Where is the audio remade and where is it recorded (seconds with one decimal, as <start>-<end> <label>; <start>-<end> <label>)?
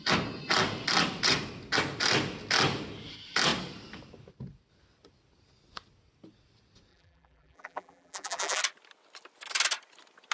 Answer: 0.0-6.9 recorded; 6.9-8.6 remade; 8.6-10.3 recorded